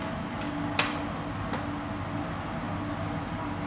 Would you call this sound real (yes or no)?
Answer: yes